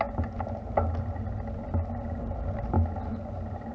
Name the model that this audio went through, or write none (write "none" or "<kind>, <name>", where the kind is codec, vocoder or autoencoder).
none